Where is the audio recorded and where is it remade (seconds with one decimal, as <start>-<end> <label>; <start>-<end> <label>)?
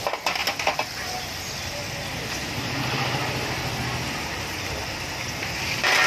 0.0-6.1 recorded